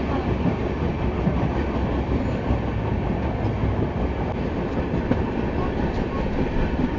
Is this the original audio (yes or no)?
yes